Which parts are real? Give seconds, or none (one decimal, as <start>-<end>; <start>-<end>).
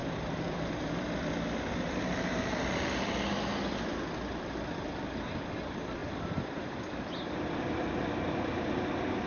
3.4-6.0; 7.8-9.3